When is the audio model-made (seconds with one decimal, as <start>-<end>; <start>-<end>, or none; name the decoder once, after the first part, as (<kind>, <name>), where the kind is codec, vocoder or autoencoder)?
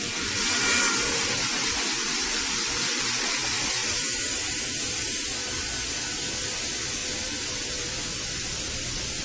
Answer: 3.8-5.2 (vocoder, BigVGAN v2)